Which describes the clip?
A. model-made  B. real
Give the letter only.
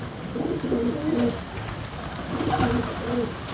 B